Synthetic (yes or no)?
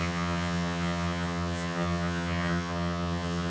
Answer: yes